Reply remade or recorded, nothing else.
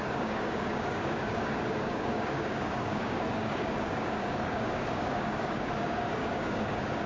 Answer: remade